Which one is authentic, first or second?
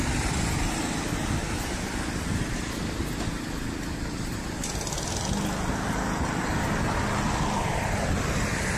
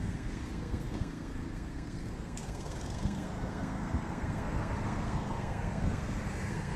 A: first